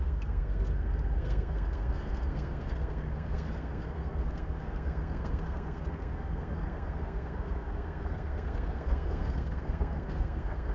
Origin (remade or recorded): remade